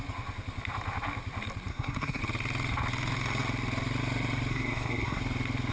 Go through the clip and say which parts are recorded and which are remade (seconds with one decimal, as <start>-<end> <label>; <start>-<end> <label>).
0.0-1.7 recorded; 1.7-2.2 remade; 2.2-4.5 recorded; 4.5-5.2 remade; 5.2-5.7 recorded